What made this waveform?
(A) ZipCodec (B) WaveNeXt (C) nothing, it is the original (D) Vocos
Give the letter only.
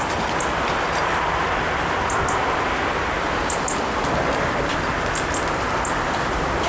C